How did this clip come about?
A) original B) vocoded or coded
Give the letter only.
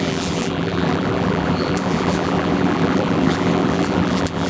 B